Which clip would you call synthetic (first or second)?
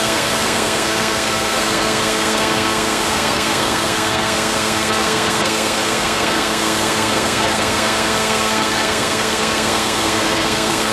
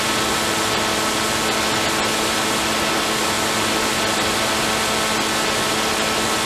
first